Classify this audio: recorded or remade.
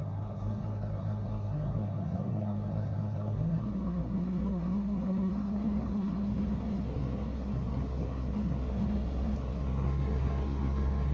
remade